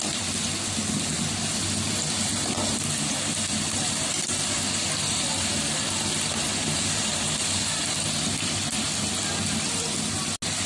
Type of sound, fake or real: real